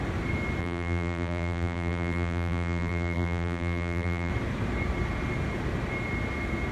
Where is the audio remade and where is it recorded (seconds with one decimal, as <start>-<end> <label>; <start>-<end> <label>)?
0.0-0.6 recorded; 0.6-4.3 remade; 4.3-6.7 recorded